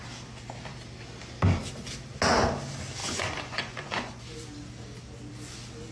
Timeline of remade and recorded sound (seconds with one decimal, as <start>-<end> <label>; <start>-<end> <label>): 0.0-3.0 recorded; 3.0-4.2 remade; 4.2-5.9 recorded